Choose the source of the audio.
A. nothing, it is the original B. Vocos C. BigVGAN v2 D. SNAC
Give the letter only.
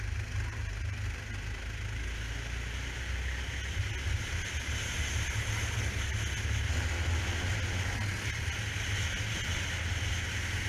A